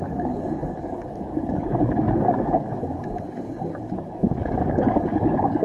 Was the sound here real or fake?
fake